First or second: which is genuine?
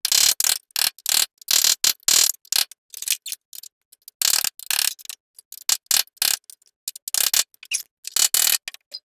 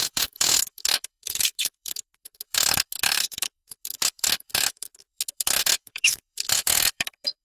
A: first